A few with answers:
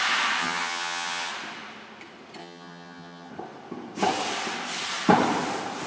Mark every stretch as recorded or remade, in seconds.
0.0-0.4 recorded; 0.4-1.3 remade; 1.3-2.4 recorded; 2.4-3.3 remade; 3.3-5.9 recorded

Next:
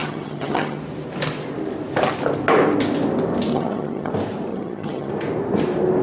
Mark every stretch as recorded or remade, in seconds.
0.0-0.8 remade; 0.8-3.5 recorded; 3.5-4.1 remade; 4.1-4.5 recorded; 4.5-5.1 remade; 5.1-6.0 recorded

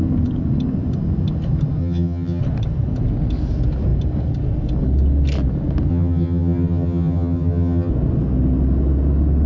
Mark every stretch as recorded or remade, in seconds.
0.0-1.8 recorded; 1.8-2.4 remade; 2.4-5.9 recorded; 5.9-7.9 remade; 7.9-9.5 recorded

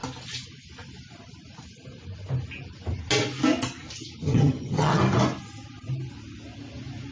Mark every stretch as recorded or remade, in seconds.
0.0-4.2 recorded; 4.2-5.0 remade; 5.0-7.1 recorded

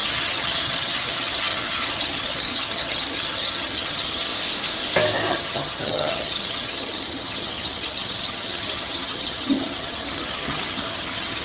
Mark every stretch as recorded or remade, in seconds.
0.0-4.3 remade; 4.3-5.3 recorded; 5.3-11.4 remade

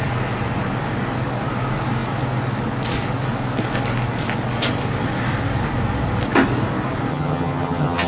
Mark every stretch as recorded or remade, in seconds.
0.0-7.1 recorded; 7.1-8.1 remade

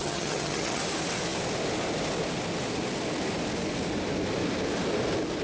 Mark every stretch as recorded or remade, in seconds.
0.0-0.8 remade; 0.8-5.4 recorded